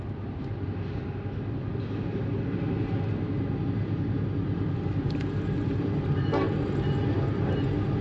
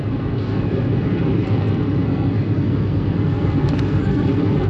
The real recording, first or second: first